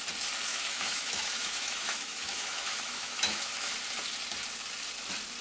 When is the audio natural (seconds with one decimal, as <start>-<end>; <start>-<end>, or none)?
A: 0.0-0.5; 3.7-5.4